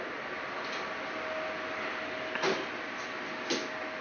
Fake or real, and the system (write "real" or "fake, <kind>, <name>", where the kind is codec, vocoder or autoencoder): real